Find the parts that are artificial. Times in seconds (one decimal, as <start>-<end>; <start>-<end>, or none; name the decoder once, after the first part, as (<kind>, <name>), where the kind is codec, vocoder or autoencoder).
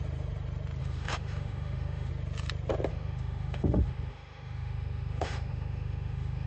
0.8-2.1 (autoencoder, DAC-VAE); 2.9-6.5